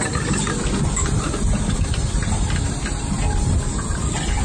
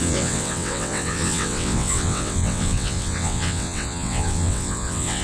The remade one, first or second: second